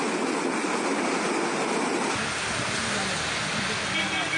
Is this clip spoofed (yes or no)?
no